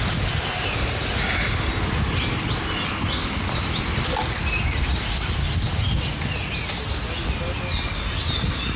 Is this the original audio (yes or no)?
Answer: yes